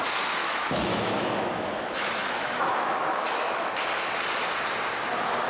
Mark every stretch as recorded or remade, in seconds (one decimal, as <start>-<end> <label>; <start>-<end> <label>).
0.0-0.4 recorded; 0.4-3.7 remade; 3.7-5.5 recorded